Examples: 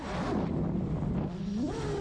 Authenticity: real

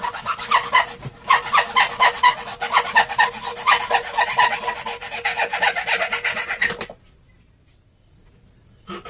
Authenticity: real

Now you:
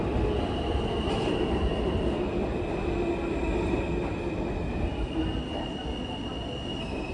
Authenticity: real